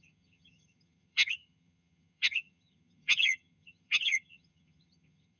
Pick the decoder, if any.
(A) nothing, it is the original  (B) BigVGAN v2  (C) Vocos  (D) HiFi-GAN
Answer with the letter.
D